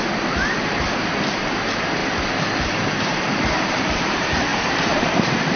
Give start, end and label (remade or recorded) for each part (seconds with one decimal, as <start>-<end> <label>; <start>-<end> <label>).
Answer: 0.0-2.0 remade; 2.0-3.0 recorded; 3.0-5.6 remade